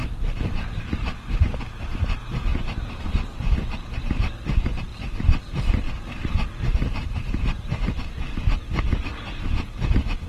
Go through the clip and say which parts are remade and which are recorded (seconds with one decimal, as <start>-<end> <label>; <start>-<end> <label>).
0.0-1.6 remade; 1.6-2.5 recorded; 2.5-3.0 remade; 3.0-4.9 recorded; 4.9-7.9 remade; 7.9-9.1 recorded; 9.1-10.3 remade